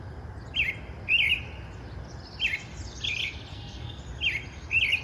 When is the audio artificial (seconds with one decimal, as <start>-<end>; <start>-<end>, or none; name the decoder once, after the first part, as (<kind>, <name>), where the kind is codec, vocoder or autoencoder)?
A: 3.5-4.0 (codec, SNAC)